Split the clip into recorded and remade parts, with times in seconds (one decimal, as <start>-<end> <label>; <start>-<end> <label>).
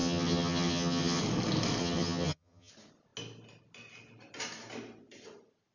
0.0-1.2 remade; 1.2-1.8 recorded; 1.8-2.7 remade; 2.7-5.7 recorded